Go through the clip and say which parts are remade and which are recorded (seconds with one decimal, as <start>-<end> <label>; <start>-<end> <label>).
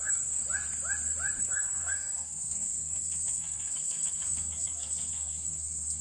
0.0-0.4 remade; 0.4-1.4 recorded; 1.4-6.0 remade